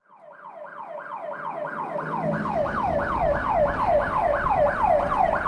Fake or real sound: real